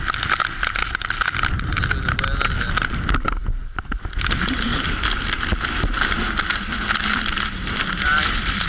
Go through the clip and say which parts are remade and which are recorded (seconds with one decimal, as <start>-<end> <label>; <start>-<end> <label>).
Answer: 0.0-8.7 recorded